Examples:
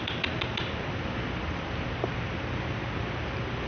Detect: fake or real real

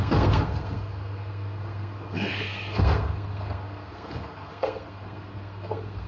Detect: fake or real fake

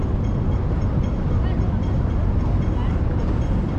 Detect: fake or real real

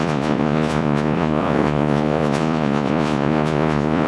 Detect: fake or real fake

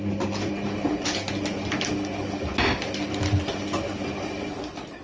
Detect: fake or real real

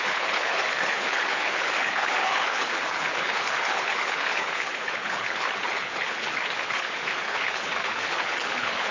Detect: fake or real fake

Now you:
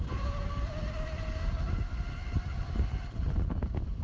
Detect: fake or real real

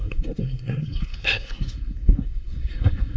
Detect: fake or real fake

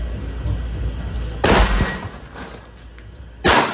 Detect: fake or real real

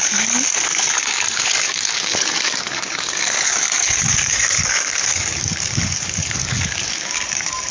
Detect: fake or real fake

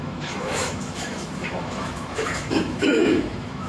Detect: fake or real fake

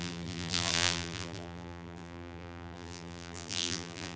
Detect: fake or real fake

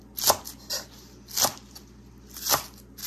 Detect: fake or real real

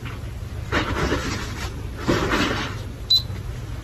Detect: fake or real real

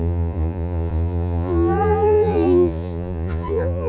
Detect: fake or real fake